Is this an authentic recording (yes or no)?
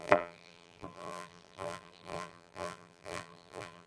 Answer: no